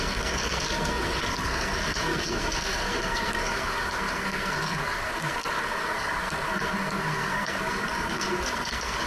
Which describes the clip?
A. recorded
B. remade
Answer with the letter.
B